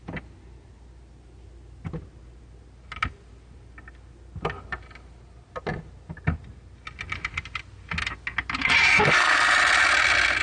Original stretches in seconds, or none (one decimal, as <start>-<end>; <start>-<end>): 0.0-10.4